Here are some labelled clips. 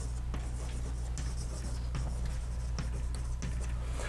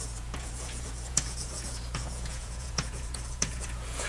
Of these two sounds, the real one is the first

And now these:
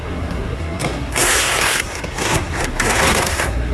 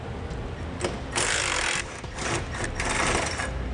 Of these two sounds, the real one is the second